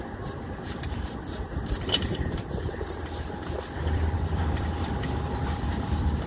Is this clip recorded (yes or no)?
no